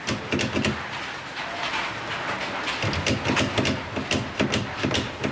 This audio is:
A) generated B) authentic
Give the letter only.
B